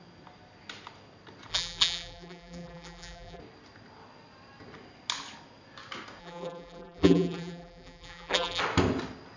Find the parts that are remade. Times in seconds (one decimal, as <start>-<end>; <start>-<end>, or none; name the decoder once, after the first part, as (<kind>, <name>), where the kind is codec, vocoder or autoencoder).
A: 1.5-3.4 (vocoder, BigVGAN v2); 6.2-8.6